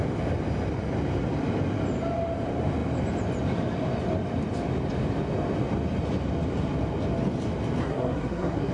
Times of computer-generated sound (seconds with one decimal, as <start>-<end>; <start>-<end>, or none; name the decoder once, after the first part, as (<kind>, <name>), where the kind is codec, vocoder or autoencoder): 7.8-8.7 (codec, SNAC)